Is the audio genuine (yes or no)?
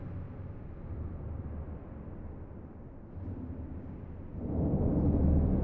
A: yes